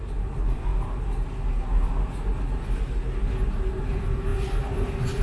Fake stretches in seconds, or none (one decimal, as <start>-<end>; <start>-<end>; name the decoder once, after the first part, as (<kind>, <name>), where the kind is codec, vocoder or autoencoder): none